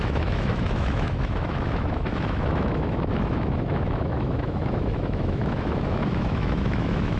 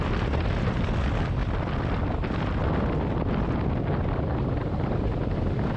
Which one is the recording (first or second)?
second